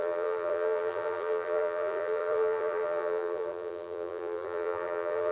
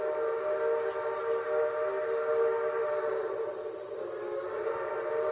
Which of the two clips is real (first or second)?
second